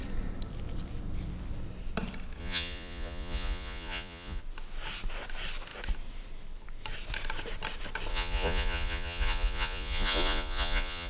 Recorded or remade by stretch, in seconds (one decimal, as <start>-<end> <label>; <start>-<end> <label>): 0.0-2.4 recorded; 2.4-4.4 remade; 4.4-8.1 recorded; 8.1-11.1 remade